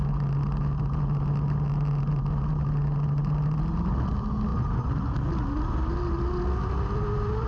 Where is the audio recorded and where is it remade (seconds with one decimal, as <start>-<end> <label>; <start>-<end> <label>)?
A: 0.0-7.5 recorded